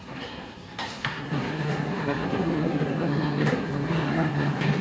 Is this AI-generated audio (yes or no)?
yes